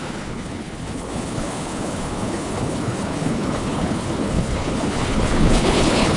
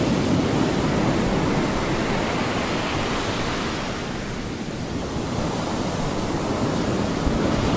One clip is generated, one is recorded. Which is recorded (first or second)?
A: second